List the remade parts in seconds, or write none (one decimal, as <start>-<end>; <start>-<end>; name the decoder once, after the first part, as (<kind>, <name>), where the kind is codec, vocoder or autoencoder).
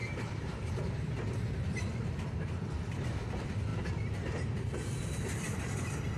0.0-0.7 (vocoder, BigVGAN v2); 3.7-5.0